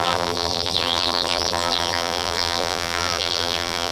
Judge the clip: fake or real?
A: fake